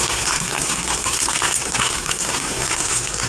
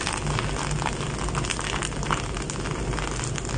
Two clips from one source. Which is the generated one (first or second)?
first